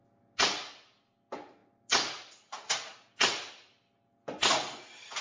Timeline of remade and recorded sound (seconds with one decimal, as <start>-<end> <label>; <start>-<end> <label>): 0.0-5.2 recorded